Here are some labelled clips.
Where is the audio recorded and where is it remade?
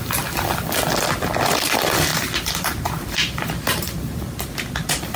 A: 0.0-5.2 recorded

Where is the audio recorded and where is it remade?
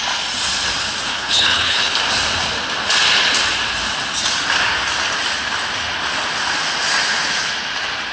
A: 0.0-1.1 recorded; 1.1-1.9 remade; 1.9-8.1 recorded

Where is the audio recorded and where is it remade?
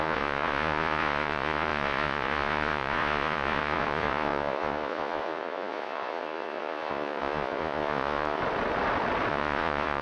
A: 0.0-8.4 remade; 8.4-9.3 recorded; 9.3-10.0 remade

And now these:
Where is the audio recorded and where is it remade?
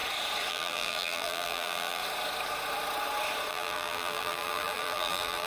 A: 0.0-0.5 recorded; 0.5-2.0 remade; 2.0-3.5 recorded; 3.5-5.5 remade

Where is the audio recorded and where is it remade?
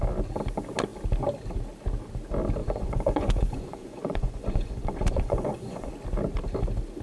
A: 0.0-2.6 recorded; 2.6-5.9 remade; 5.9-7.0 recorded